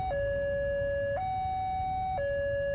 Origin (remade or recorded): recorded